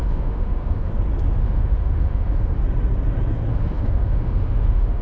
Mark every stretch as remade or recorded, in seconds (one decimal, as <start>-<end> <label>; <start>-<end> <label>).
0.0-0.9 remade; 0.9-1.4 recorded; 1.4-2.6 remade; 2.6-3.5 recorded; 3.5-5.0 remade

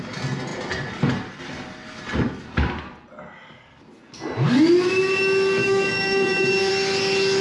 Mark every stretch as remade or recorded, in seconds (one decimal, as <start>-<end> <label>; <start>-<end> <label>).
0.0-5.6 recorded; 5.6-6.7 remade; 6.7-7.4 recorded

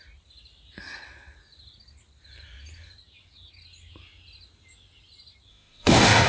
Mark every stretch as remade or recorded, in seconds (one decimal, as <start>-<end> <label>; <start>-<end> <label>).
0.0-5.5 recorded; 5.5-6.3 remade

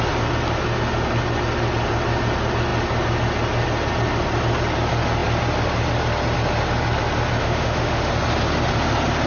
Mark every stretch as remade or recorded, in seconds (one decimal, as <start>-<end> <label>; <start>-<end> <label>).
0.0-7.4 recorded; 7.4-8.1 remade; 8.1-9.3 recorded

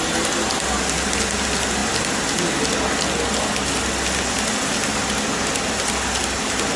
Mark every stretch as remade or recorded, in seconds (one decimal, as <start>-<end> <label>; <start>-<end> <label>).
0.0-6.8 recorded